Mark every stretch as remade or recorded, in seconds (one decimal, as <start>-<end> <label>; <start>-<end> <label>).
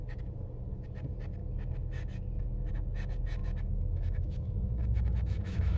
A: 0.0-3.4 recorded; 3.4-5.8 remade